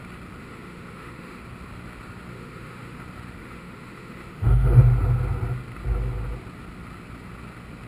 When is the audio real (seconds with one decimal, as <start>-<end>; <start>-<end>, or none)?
0.0-0.4; 1.4-2.3; 3.0-3.4; 4.8-7.9